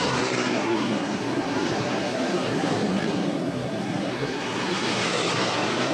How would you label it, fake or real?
fake